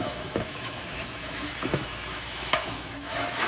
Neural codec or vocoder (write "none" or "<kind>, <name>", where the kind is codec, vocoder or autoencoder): autoencoder, DAC-VAE